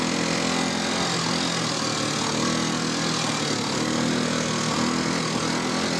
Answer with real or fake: real